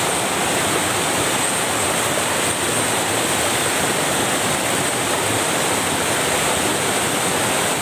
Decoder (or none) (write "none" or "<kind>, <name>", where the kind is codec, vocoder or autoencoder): none